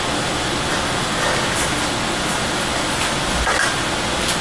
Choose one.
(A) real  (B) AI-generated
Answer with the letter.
A